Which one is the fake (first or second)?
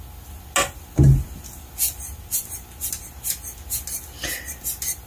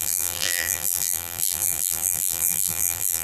second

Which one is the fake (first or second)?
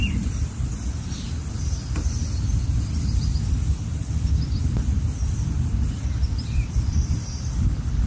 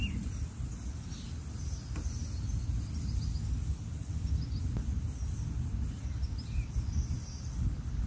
first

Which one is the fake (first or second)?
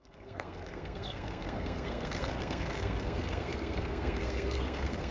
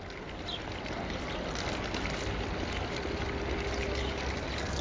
first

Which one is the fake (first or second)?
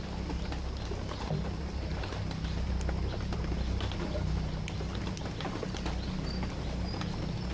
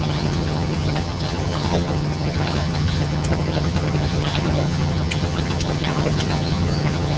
second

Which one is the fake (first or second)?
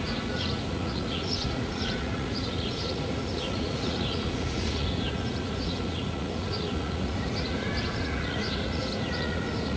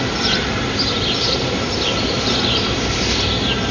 first